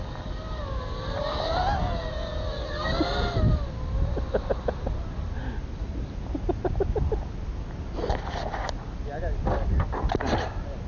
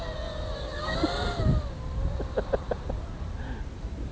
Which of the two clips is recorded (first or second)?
first